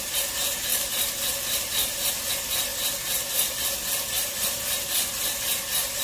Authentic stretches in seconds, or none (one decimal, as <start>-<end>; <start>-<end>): 0.0-0.7; 2.3-6.0